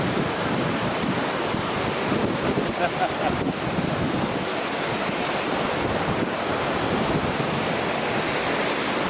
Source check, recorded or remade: recorded